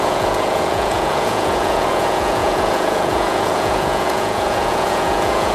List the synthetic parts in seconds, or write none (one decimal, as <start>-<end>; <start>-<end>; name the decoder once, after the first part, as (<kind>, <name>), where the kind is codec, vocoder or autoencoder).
0.0-5.5 (vocoder, Vocos)